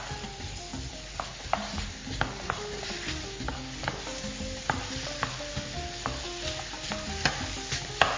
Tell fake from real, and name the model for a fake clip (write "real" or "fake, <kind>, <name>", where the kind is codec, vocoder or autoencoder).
real